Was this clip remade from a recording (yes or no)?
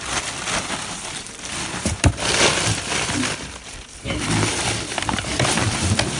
yes